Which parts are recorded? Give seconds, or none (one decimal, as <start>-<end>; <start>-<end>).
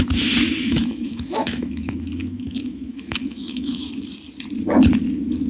0.0-0.6; 3.9-5.5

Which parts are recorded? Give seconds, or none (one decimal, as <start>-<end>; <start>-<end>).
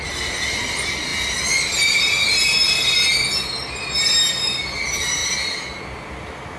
0.0-6.6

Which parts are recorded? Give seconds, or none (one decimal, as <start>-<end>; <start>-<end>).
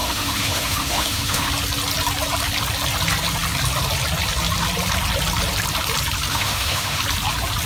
1.5-6.3; 7.0-7.7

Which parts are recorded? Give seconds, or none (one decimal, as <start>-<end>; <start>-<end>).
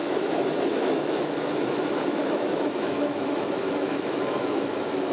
none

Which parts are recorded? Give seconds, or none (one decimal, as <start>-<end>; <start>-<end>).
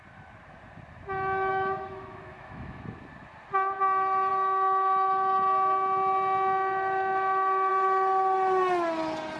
0.0-1.5; 2.8-9.4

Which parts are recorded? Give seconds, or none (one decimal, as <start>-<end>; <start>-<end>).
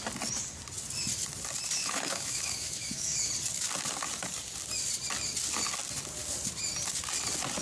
0.0-1.8; 3.3-7.6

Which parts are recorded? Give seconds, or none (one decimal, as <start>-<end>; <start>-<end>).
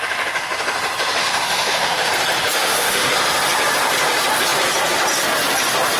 0.0-1.2; 2.1-2.5; 3.1-6.0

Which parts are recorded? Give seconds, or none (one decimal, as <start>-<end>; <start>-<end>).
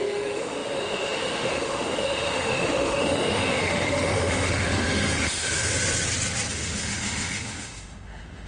5.7-6.5